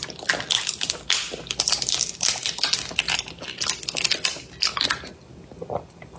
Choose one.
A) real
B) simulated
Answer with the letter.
A